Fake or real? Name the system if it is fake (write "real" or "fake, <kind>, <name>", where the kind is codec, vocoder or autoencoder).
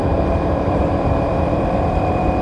fake, vocoder, BigVGAN v2